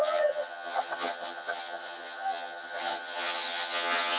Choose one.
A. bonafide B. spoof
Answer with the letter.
B